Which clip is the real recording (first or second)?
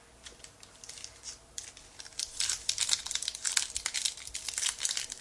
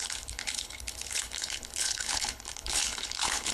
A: first